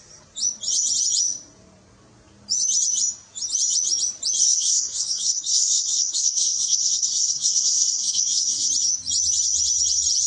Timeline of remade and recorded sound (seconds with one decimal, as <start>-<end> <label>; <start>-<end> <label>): 0.0-4.4 recorded; 4.4-8.7 remade; 8.7-10.3 recorded